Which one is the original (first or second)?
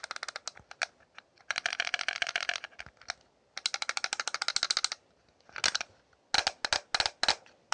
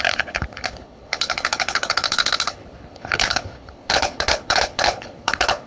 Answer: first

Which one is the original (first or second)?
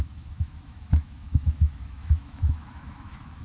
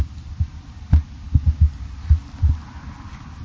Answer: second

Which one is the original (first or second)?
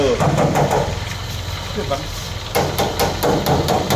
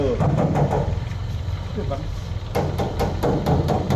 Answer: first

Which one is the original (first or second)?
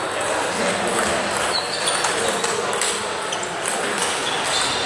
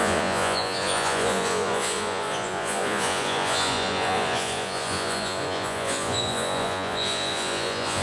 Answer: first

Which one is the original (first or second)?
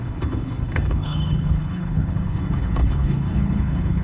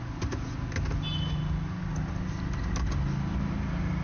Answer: second